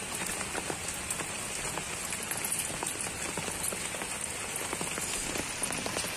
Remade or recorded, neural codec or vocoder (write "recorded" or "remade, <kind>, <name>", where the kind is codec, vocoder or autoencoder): recorded